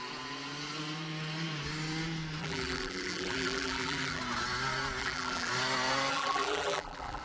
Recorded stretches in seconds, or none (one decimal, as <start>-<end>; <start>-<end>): 0.0-2.4; 4.2-5.0; 5.5-6.1